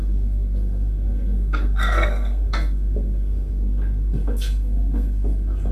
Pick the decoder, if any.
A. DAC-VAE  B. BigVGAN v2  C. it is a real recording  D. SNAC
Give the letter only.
D